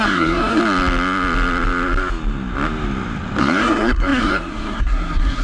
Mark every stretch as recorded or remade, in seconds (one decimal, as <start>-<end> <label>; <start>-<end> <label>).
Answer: 0.0-0.6 remade; 0.6-3.4 recorded; 3.4-5.4 remade